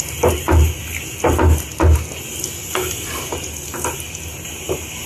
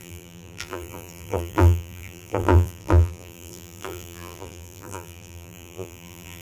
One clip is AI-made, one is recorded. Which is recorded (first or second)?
first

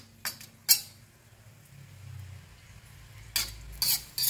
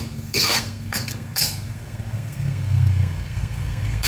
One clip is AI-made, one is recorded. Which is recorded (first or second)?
first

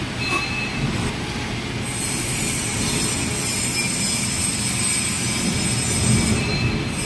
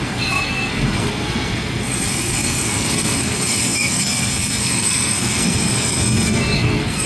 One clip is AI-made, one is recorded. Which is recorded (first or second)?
first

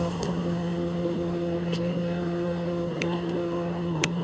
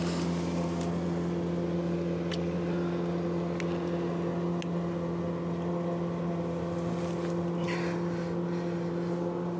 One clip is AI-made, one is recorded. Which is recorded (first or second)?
second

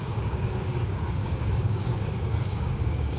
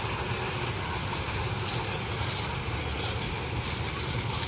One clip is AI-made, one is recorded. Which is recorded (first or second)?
second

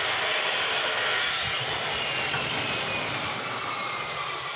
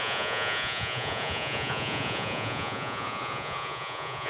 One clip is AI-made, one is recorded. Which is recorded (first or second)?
first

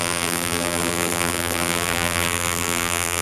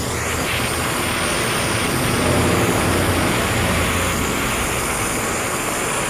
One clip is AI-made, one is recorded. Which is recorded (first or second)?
second